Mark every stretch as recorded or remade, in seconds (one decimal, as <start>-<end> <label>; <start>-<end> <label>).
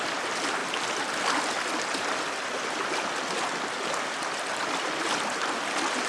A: 0.0-6.1 recorded